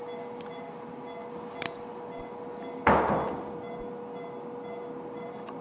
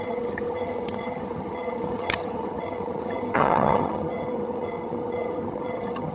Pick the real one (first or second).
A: first